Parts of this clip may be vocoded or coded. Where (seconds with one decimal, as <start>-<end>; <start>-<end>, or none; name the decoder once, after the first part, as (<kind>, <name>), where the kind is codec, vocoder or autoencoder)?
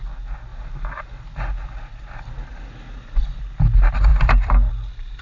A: none